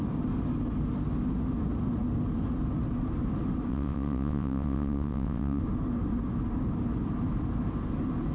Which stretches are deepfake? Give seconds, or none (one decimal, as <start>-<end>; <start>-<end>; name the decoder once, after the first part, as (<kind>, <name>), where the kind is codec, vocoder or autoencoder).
3.7-5.6 (vocoder, WaveNeXt)